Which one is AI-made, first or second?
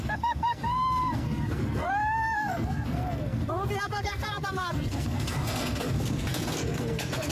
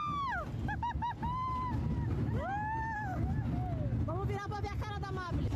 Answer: first